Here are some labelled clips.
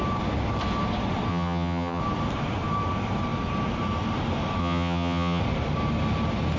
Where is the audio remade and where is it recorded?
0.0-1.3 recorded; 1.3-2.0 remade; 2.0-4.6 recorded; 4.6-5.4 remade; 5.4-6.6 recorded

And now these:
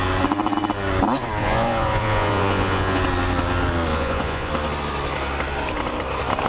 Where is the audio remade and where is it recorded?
0.0-1.4 recorded; 1.4-3.0 remade; 3.0-3.9 recorded; 3.9-4.5 remade; 4.5-6.5 recorded

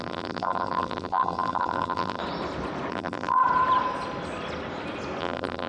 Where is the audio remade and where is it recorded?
0.0-2.2 remade; 2.2-2.9 recorded; 2.9-3.4 remade; 3.4-5.2 recorded; 5.2-5.7 remade

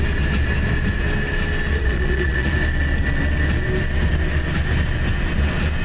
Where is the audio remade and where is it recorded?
0.0-1.7 recorded; 1.7-2.5 remade; 2.5-5.8 recorded

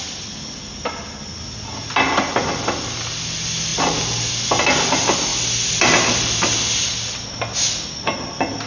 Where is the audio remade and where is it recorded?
0.0-8.7 recorded

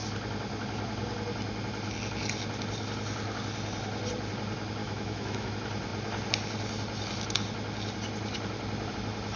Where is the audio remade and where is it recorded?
0.0-4.8 recorded; 4.8-5.5 remade; 5.5-9.4 recorded